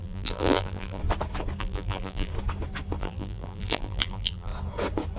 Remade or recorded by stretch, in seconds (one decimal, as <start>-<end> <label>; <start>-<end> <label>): 0.0-1.0 remade; 1.0-1.6 recorded; 1.6-2.3 remade; 2.3-3.0 recorded; 3.0-4.5 remade; 4.5-5.2 recorded